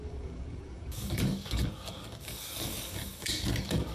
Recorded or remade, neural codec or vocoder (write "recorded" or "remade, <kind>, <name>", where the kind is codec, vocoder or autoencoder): remade, codec, DAC